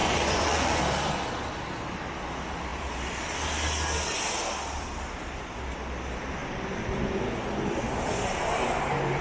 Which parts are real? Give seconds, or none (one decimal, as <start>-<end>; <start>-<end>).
0.8-9.2